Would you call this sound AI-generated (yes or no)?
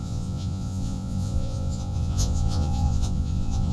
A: yes